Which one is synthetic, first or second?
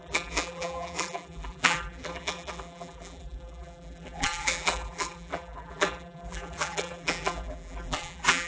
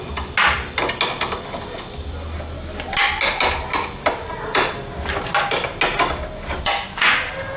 first